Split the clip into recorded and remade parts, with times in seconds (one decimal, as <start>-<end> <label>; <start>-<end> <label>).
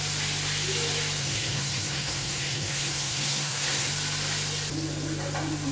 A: 0.0-1.2 recorded; 1.2-3.9 remade; 3.9-5.7 recorded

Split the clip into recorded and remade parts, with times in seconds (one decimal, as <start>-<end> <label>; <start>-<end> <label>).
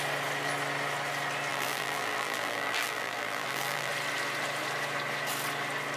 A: 0.0-1.5 recorded; 1.5-3.9 remade; 3.9-6.0 recorded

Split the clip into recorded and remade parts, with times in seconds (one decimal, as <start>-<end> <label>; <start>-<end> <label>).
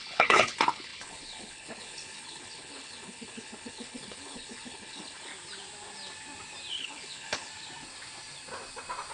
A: 0.0-5.3 remade; 5.3-6.7 recorded; 6.7-7.5 remade; 7.5-9.1 recorded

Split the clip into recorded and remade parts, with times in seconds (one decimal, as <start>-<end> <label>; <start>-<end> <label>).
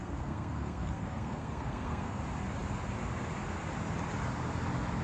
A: 0.0-2.2 remade; 2.2-5.0 recorded